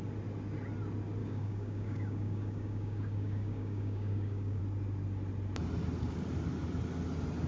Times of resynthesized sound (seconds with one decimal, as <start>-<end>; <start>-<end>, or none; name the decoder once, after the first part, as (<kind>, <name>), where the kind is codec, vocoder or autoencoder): 1.2-4.6 (codec, DAC)